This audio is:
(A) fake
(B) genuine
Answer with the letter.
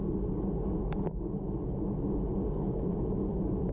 B